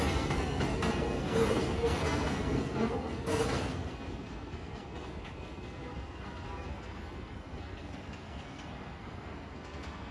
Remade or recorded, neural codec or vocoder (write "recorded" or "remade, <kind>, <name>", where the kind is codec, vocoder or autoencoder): remade, codec, SNAC